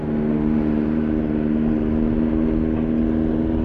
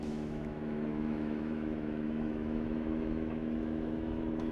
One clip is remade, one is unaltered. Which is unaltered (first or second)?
first